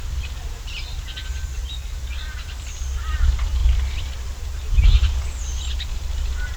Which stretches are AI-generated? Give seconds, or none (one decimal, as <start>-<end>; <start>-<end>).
0.0-1.6; 2.2-6.6